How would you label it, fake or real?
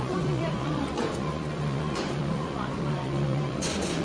fake